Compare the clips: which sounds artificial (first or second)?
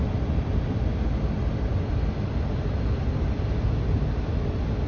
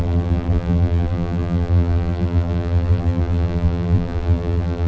second